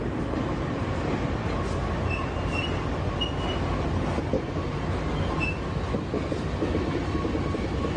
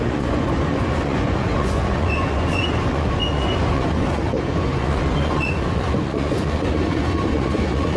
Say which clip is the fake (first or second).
second